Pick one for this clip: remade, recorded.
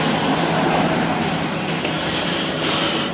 remade